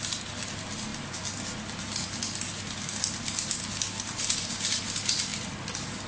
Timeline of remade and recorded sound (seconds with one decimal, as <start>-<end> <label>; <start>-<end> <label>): 0.0-6.1 recorded